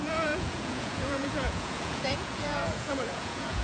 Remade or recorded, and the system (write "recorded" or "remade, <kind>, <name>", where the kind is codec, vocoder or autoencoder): remade, vocoder, Vocos